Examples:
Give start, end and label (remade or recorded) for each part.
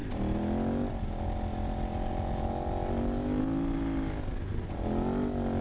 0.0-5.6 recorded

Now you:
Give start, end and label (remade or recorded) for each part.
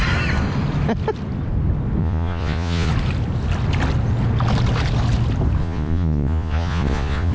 0.0-2.0 recorded; 2.0-2.9 remade; 2.9-5.6 recorded; 5.6-7.3 remade